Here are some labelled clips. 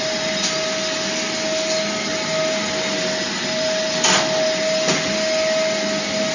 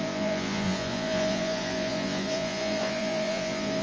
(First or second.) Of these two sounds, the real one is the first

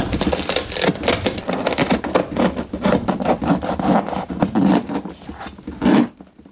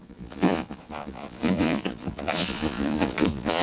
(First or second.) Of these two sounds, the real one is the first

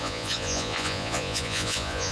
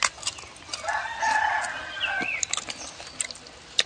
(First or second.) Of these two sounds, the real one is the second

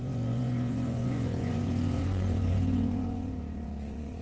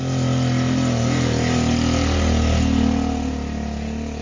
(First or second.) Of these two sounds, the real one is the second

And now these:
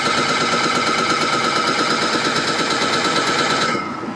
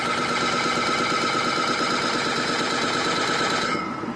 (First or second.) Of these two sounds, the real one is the second